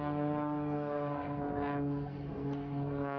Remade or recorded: remade